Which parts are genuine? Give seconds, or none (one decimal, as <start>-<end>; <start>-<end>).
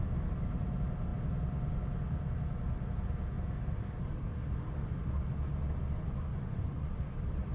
0.0-6.3; 6.9-7.5